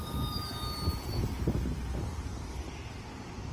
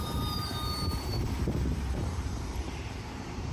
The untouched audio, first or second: first